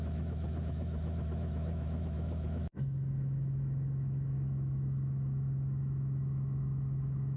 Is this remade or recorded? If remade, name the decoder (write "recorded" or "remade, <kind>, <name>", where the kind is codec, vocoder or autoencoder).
remade, autoencoder, DAC-VAE